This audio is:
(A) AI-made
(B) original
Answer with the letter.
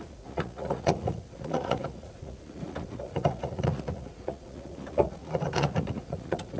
A